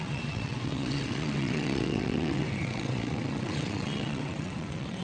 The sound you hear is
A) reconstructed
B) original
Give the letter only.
A